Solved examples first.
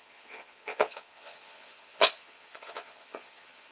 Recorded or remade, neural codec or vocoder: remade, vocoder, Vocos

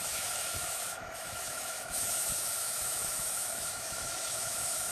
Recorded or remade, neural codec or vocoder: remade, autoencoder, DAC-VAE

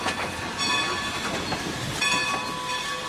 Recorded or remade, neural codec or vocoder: recorded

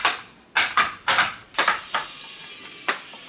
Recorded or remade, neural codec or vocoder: recorded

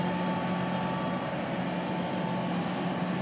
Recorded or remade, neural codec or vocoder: recorded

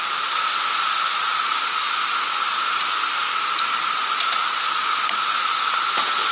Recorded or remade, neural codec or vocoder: recorded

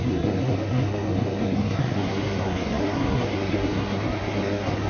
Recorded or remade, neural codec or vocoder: remade, codec, SNAC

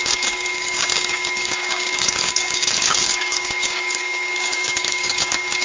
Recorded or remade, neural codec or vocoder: remade, codec, DAC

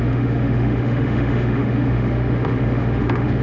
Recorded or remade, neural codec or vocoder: remade, autoencoder, DAC-VAE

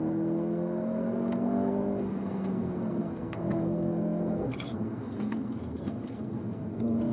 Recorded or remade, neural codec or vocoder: remade, codec, SNAC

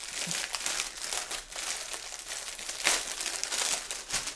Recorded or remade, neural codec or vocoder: recorded